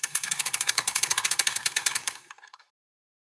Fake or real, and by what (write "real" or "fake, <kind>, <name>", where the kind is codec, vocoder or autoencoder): fake, codec, SNAC